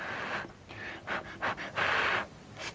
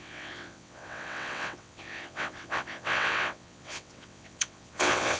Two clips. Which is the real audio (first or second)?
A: first